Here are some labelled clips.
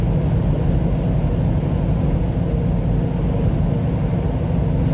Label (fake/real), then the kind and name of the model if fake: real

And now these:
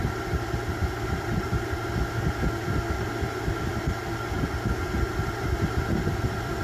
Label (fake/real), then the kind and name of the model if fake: real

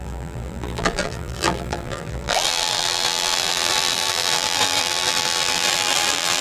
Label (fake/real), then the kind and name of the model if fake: fake, vocoder, BigVGAN v2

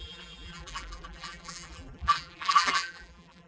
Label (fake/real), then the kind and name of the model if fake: fake, vocoder, BigVGAN v2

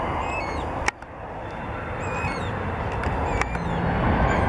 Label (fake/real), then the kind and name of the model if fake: real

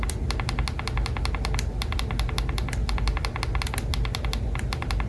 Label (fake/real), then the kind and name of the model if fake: real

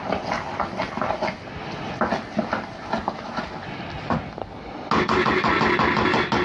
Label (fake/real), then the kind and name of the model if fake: real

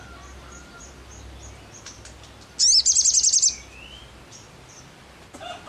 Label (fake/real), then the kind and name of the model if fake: real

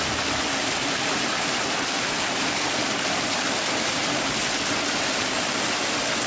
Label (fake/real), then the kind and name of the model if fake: real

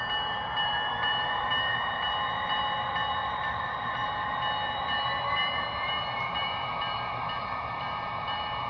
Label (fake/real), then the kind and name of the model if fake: fake, vocoder, BigVGAN v2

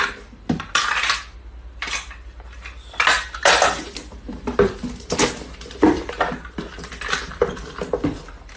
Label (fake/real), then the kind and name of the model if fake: real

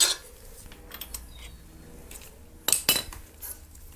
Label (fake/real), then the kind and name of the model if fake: real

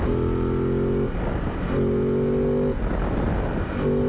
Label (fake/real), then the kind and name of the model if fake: real